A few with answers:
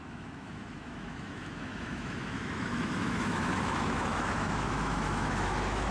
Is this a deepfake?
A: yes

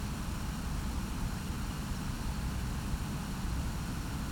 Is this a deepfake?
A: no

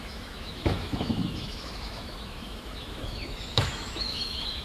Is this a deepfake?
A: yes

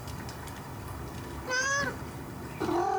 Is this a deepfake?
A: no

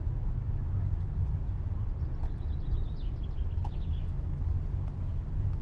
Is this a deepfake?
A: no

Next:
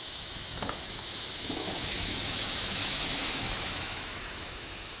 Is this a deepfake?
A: yes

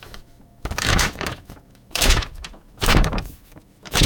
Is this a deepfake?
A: yes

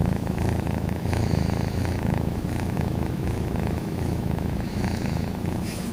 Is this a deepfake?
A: yes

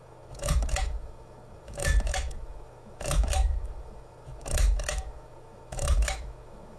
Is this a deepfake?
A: yes